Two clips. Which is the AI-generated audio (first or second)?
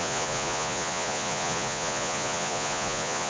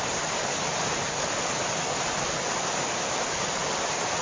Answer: first